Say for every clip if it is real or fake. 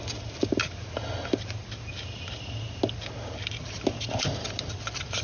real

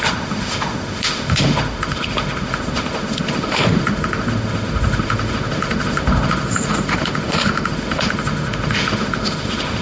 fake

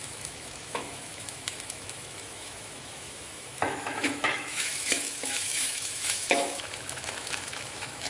fake